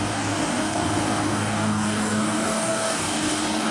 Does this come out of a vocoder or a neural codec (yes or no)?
yes